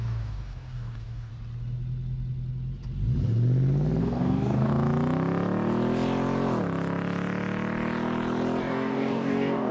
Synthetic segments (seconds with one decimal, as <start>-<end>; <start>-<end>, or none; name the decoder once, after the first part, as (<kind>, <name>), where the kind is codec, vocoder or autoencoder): 0.0-1.3 (codec, DAC); 4.0-4.7; 8.6-9.7